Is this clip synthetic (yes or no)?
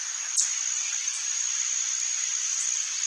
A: no